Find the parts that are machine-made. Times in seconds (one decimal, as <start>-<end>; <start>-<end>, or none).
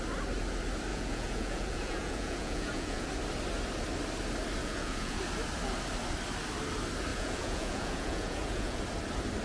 0.9-3.1; 4.6-5.2; 7.1-8.8